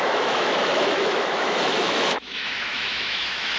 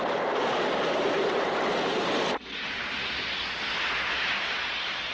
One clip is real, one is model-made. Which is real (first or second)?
second